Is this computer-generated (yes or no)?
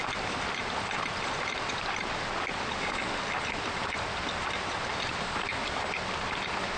no